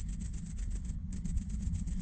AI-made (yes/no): yes